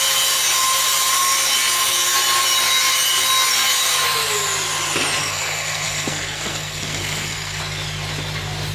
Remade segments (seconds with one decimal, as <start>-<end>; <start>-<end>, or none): 5.2-7.6